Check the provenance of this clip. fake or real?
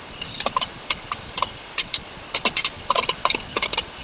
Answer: real